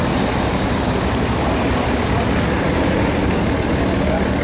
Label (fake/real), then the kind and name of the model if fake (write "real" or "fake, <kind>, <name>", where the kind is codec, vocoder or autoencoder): real